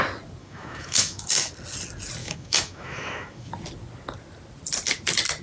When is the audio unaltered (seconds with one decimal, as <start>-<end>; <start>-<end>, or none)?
0.0-0.4; 1.5-2.2; 3.5-5.4